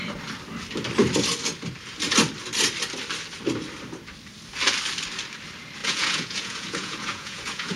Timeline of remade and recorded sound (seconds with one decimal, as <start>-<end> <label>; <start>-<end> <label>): 0.0-5.8 recorded; 5.8-7.8 remade